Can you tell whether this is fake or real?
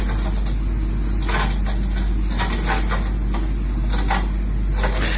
real